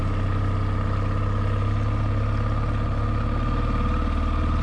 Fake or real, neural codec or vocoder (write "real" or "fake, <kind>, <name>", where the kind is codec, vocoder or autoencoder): real